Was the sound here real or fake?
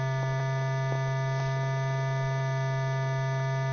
real